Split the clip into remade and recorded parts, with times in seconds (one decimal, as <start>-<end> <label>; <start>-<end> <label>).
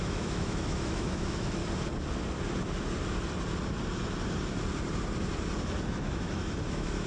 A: 0.0-1.6 remade; 1.6-5.9 recorded; 5.9-7.1 remade